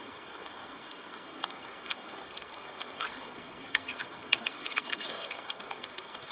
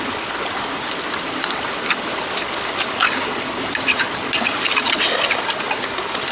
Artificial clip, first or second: first